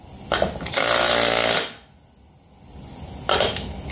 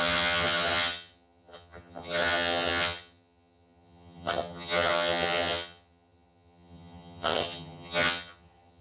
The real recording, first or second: first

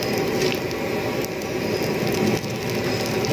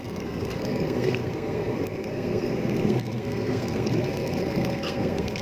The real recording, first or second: first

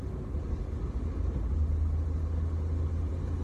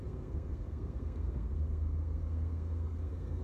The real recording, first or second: first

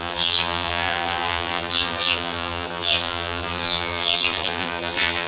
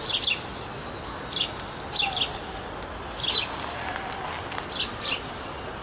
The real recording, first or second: second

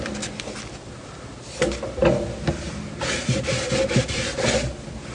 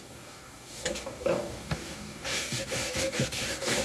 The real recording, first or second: first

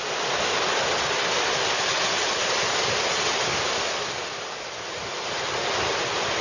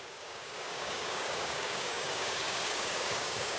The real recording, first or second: first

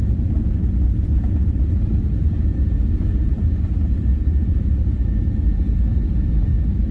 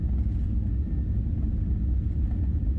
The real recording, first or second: second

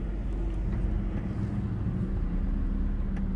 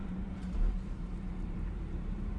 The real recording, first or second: first